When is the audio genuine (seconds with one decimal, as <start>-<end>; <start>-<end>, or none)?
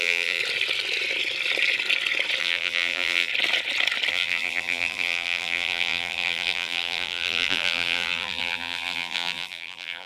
0.4-2.4; 3.3-4.1